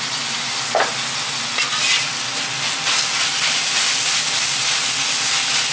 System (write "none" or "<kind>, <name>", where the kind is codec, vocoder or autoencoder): none